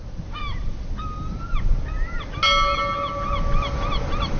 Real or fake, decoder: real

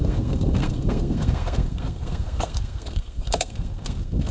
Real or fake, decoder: fake, codec, SNAC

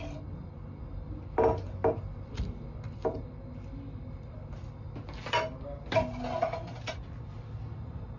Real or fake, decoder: real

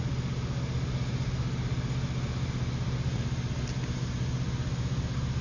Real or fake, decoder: real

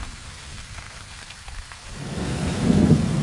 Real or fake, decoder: fake, codec, SNAC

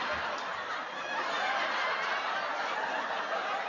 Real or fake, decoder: real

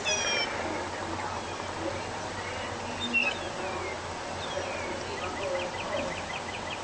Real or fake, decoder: real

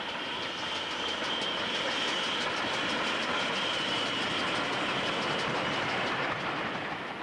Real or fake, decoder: real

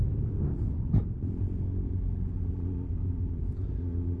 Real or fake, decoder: real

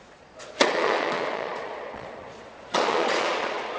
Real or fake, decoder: fake, vocoder, Vocos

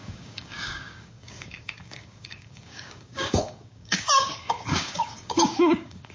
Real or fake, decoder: fake, codec, DAC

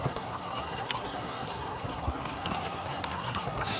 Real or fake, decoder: fake, codec, SNAC